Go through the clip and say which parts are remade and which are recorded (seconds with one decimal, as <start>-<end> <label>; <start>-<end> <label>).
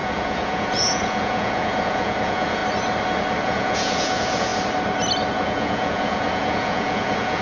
0.0-2.6 remade; 2.6-3.4 recorded; 3.4-4.5 remade; 4.5-5.3 recorded; 5.3-7.4 remade